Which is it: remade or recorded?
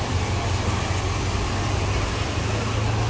recorded